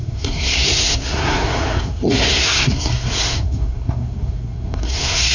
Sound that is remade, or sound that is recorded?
remade